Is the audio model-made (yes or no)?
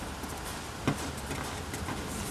no